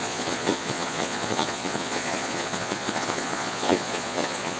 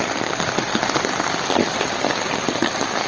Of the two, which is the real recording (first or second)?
second